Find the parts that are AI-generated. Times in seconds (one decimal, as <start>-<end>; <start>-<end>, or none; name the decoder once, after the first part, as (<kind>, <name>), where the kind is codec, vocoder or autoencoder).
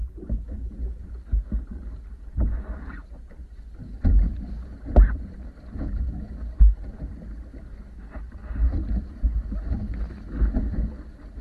none